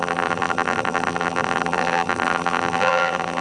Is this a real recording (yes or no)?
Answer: no